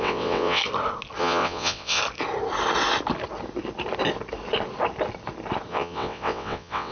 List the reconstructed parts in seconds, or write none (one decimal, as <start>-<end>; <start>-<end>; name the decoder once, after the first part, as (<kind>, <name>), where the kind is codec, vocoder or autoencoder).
0.0-0.6 (vocoder, WaveNeXt); 1.2-2.0; 5.7-6.9